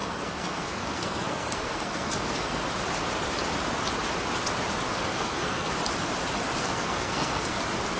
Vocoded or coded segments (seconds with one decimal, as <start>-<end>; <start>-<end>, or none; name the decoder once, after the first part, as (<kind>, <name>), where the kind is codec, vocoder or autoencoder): 0.0-2.6 (codec, SNAC); 4.9-5.7; 6.6-7.6